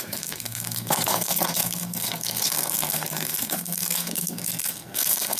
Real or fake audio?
fake